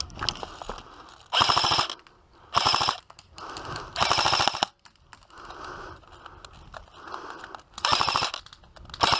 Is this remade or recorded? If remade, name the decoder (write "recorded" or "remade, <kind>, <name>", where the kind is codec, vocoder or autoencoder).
recorded